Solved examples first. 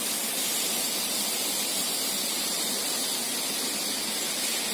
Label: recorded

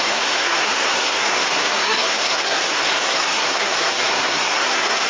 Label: remade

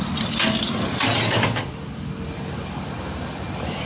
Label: recorded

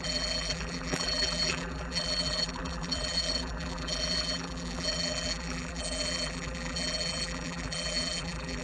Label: remade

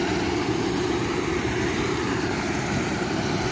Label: remade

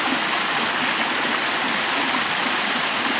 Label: recorded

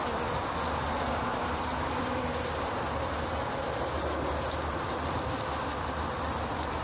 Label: recorded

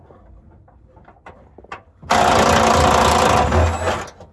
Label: recorded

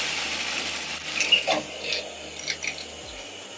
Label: recorded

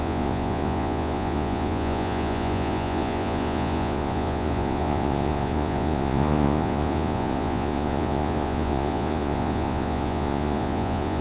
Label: remade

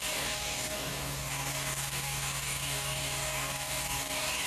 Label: remade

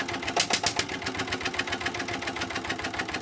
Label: recorded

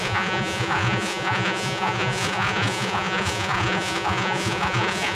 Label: remade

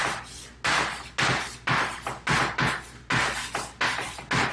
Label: recorded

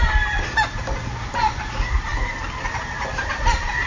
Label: recorded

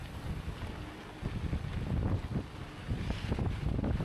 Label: recorded